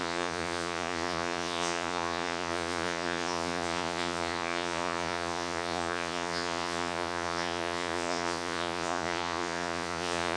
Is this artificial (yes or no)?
yes